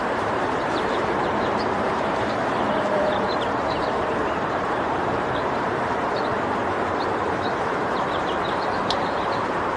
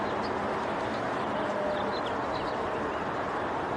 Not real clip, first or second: first